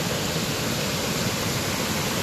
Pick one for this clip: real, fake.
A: real